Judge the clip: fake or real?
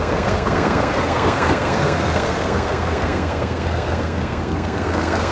fake